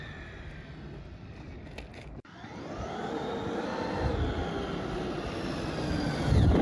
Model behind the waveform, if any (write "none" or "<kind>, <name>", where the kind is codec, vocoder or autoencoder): none